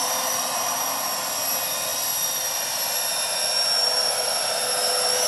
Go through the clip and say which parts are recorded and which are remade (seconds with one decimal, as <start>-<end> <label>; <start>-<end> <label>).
0.0-5.3 recorded